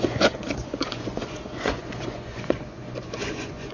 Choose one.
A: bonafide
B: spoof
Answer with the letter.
B